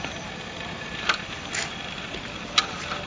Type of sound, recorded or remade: recorded